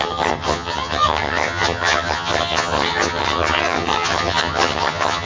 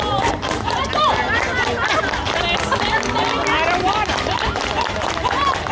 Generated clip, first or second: first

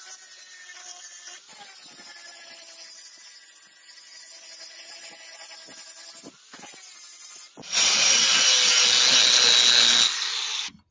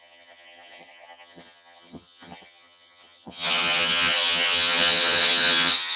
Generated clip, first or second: second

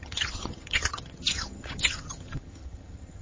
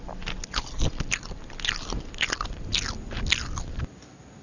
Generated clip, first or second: first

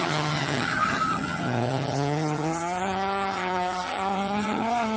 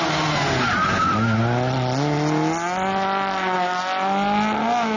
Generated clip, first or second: first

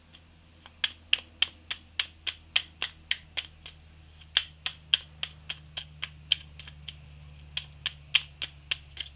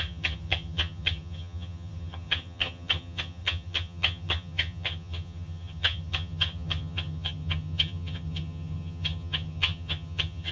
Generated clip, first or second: second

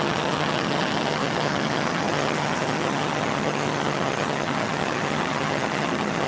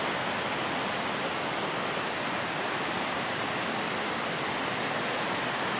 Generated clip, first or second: first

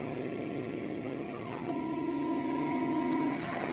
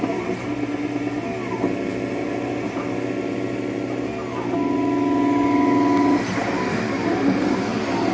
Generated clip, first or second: first